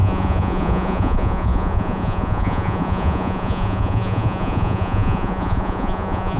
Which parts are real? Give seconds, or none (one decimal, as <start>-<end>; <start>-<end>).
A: none